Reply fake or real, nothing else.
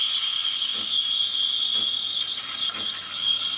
real